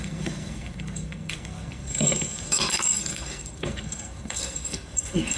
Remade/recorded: remade